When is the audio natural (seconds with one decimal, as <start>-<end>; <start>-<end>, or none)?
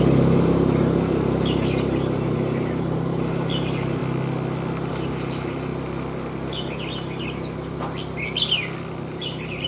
4.0-4.9; 5.7-9.1